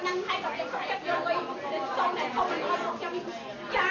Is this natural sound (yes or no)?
yes